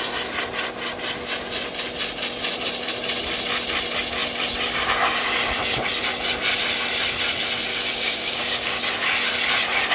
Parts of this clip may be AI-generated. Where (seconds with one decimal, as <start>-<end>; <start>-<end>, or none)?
7.7-8.8